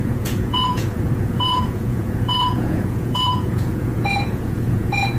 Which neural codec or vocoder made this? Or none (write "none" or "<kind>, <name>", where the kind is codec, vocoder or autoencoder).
vocoder, Vocos